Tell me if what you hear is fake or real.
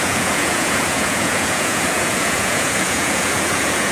fake